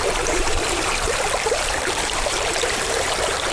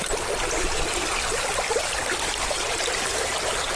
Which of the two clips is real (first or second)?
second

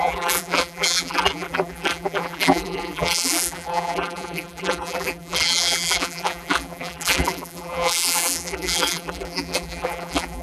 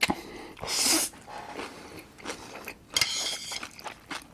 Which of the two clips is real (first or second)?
second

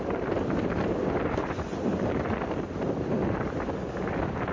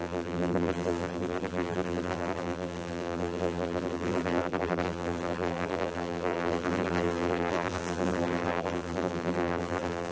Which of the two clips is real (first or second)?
first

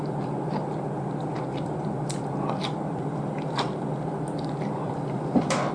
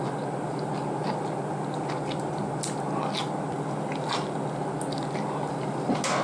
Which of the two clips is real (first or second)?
second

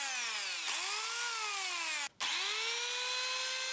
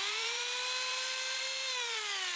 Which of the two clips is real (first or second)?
first